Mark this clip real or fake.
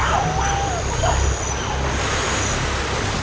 real